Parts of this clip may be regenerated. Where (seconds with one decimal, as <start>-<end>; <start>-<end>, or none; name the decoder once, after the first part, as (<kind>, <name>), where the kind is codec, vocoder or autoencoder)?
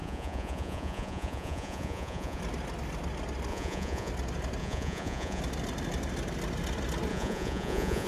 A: 0.0-2.4 (vocoder, Vocos); 3.5-4.1; 4.6-5.4; 7.1-8.1